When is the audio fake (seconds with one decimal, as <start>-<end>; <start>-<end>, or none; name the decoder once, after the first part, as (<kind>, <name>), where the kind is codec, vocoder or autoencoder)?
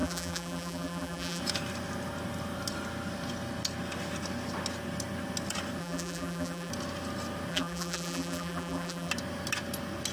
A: 0.0-1.4 (vocoder, BigVGAN v2); 5.8-6.7; 7.5-9.1